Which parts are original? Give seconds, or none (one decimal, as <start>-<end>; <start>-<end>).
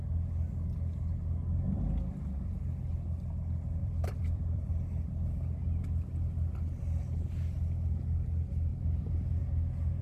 0.0-3.8; 4.7-8.7; 9.4-10.0